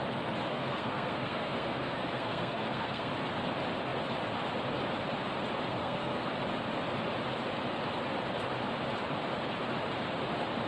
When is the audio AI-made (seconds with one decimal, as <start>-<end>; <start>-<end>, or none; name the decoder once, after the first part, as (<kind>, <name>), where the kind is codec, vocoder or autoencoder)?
0.5-3.1 (codec, SNAC); 5.7-6.3